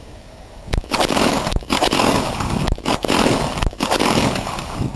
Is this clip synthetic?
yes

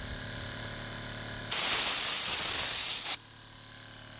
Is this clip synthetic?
no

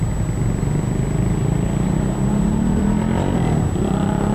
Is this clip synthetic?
no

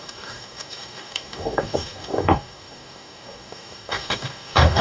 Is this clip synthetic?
yes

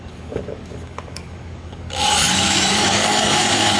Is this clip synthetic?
yes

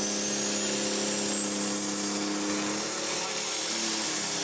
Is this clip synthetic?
no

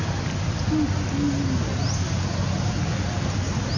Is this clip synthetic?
no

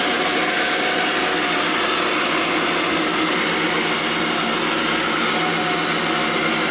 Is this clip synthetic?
no